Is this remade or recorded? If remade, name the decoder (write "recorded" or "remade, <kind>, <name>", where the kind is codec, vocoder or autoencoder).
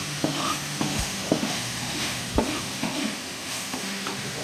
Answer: remade, autoencoder, DAC-VAE